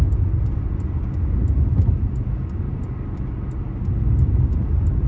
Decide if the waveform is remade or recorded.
recorded